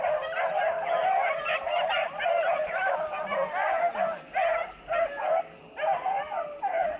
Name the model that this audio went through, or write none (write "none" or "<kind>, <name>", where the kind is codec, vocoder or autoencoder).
none